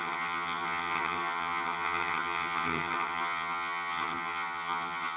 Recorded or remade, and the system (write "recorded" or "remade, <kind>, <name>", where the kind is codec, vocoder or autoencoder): remade, vocoder, HiFi-GAN